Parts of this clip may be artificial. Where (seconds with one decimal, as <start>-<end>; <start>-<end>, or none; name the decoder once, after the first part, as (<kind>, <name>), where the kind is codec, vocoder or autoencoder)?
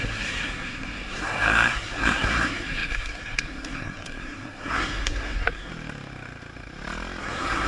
0.0-5.7 (codec, SNAC); 7.2-7.7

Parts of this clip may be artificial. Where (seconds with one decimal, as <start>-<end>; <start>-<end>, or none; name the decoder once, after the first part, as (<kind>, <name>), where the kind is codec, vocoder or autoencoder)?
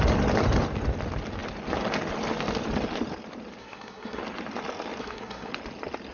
3.6-4.2 (codec, SNAC); 5.0-5.5